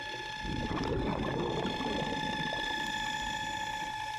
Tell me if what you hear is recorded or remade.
recorded